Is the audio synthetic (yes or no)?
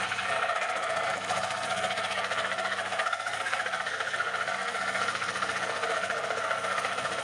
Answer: yes